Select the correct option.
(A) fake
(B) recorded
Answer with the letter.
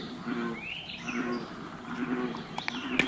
B